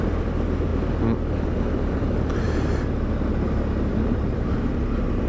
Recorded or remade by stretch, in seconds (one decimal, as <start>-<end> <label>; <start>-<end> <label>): 0.0-5.3 recorded